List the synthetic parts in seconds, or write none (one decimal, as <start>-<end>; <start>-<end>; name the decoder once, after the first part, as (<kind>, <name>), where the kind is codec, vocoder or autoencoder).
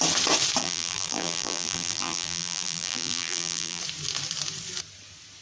0.6-3.8 (vocoder, BigVGAN v2)